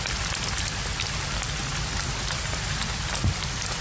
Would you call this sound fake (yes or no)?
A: no